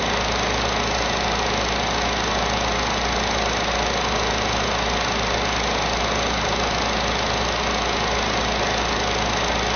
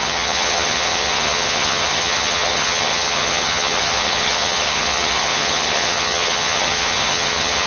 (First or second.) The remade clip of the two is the second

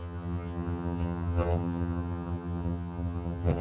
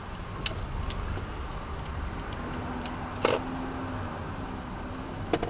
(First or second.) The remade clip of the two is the first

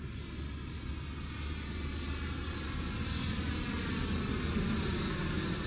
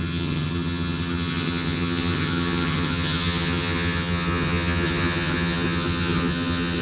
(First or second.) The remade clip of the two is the second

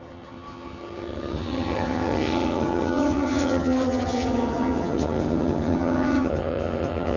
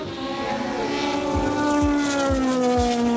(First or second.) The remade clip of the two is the first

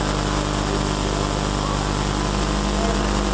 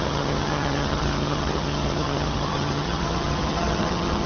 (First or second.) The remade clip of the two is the second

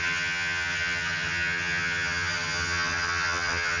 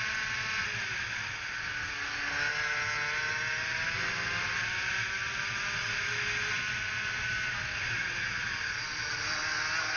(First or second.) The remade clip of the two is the first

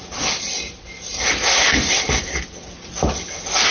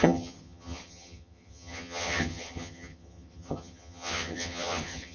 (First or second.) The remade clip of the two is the second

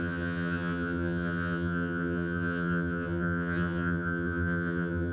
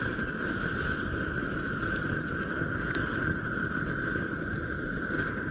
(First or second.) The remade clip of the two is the first